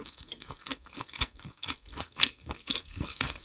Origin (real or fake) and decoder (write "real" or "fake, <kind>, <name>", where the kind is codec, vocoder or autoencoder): fake, codec, SNAC